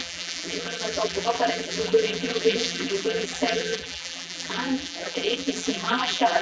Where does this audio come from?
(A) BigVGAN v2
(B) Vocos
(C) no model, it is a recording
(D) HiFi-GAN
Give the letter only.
A